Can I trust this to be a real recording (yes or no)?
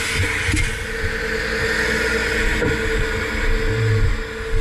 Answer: yes